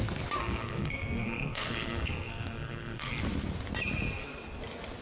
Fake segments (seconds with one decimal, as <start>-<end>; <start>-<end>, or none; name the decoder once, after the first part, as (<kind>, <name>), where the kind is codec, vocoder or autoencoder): 0.4-3.2 (codec, SNAC)